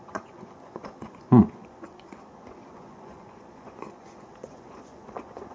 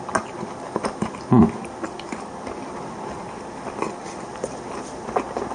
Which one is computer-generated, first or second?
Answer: first